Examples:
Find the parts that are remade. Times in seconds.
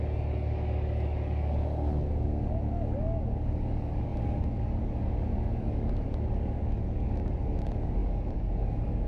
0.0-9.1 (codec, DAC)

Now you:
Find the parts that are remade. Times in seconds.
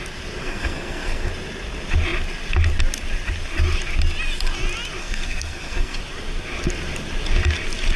0.4-1.3 (codec, SNAC); 5.0-6.0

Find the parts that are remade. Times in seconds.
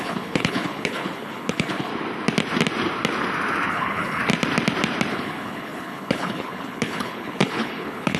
0.0-1.9 (codec, HILCodec); 3.7-4.2; 5.1-8.2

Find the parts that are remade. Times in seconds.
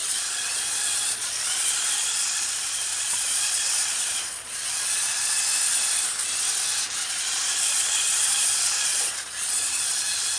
0.0-5.4 (vocoder, Vocos); 7.0-10.4